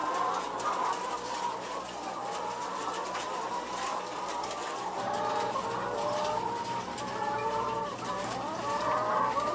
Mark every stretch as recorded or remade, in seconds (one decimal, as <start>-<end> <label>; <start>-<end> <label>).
0.0-3.5 remade; 3.5-3.9 recorded; 3.9-8.8 remade; 8.8-9.5 recorded